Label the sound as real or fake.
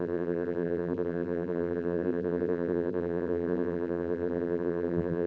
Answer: fake